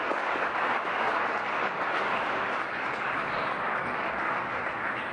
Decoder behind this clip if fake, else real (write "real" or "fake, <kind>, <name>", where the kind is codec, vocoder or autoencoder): fake, codec, DAC